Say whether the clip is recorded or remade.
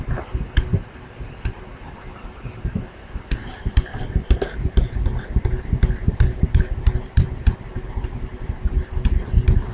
recorded